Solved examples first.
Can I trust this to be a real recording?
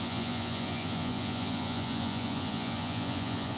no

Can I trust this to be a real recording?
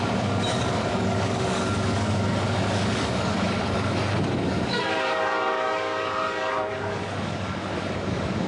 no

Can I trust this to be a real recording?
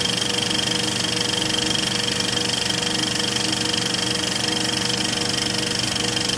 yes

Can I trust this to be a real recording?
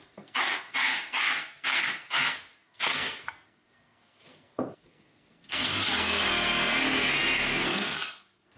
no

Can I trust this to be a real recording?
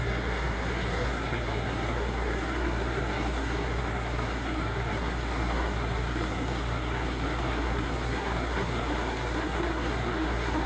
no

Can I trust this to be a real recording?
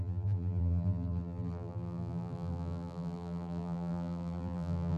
no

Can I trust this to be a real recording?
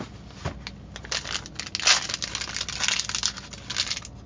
yes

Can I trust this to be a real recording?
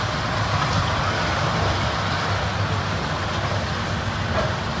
yes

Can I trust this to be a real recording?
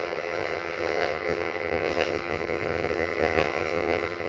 no